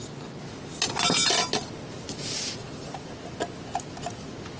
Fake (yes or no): no